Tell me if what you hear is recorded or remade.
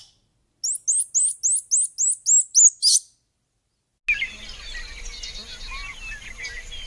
recorded